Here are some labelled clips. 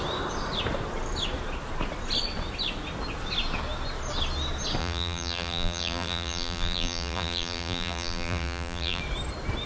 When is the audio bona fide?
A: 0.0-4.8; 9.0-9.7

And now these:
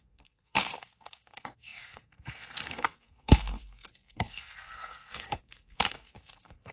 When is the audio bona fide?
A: none

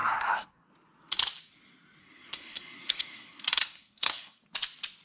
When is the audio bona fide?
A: 0.7-2.0; 4.4-5.0

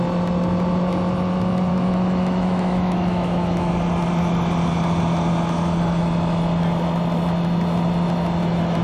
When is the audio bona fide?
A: 0.0-1.7; 3.7-8.8